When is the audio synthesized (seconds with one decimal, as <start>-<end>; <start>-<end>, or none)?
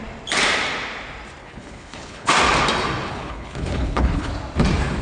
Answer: 1.4-2.3; 3.1-4.3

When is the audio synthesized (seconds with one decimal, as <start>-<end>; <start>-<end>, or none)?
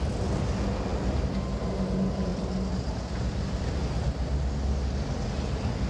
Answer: none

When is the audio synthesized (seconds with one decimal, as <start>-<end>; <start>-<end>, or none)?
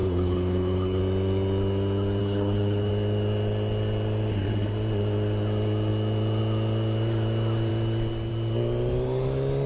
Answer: 0.0-1.0; 2.2-2.9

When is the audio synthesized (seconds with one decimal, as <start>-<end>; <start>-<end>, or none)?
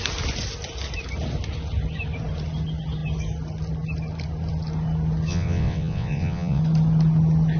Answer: 5.3-6.6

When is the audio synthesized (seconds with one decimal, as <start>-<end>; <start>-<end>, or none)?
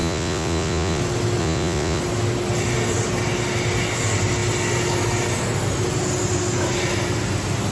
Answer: 0.0-1.0; 1.4-2.0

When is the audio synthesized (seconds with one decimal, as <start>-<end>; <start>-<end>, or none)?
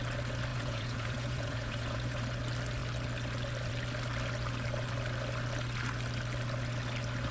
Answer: 0.5-2.2